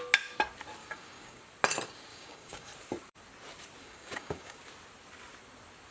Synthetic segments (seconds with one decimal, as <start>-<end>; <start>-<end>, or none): 0.8-1.4; 2.1-2.7; 3.8-4.6